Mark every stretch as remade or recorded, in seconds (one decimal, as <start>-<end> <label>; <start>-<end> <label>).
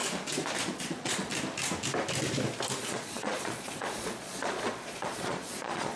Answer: 0.0-0.6 recorded; 0.6-1.3 remade; 1.3-2.8 recorded; 2.8-6.0 remade